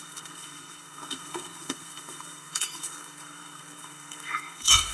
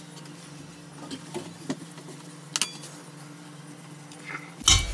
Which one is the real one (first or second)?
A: second